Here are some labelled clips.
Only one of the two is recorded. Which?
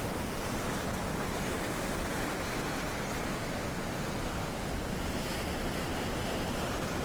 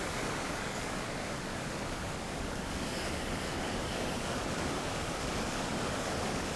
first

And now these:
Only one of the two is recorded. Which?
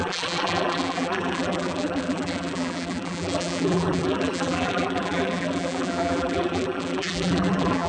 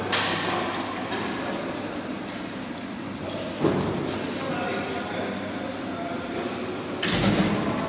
second